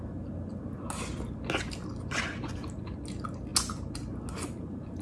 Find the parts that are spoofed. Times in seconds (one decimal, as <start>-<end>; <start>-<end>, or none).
none